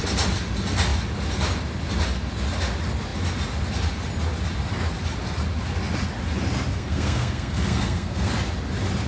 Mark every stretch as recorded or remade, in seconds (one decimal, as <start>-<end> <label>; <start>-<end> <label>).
0.0-6.7 recorded; 6.7-8.3 remade; 8.3-9.1 recorded